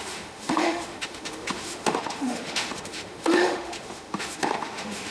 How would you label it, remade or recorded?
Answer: remade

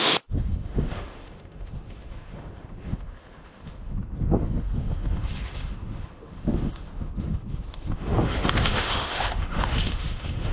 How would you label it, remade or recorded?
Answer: remade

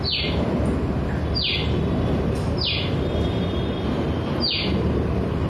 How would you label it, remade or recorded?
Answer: recorded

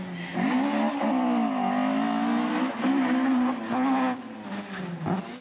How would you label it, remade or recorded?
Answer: recorded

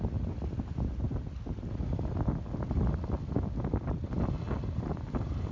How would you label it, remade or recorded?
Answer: recorded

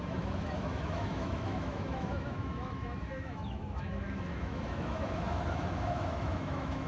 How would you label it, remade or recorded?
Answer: remade